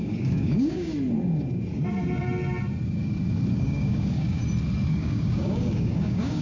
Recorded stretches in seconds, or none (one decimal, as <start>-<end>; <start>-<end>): 0.9-3.6; 4.4-4.9